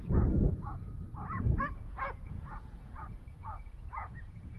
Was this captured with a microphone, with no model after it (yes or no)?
no